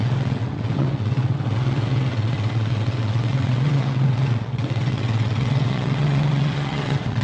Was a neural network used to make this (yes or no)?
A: yes